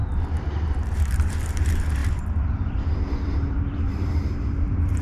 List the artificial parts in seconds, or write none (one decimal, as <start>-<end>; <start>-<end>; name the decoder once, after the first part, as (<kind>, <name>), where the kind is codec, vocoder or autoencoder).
0.0-5.0 (vocoder, BigVGAN v2)